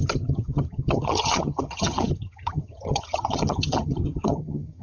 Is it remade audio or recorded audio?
remade